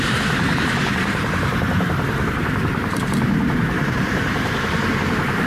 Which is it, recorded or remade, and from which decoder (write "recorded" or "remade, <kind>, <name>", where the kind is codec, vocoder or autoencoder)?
remade, vocoder, BigVGAN v2